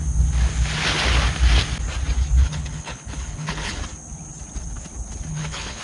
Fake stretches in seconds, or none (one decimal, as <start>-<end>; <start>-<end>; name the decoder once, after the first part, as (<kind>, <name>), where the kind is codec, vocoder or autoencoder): 2.4-3.8 (codec, HILCodec); 5.3-5.8